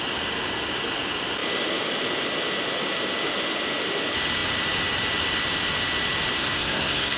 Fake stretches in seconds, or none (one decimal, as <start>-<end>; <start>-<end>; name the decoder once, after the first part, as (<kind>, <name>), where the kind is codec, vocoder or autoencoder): 6.4-7.2 (codec, SNAC)